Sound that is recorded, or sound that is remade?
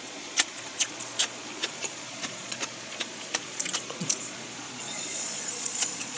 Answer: remade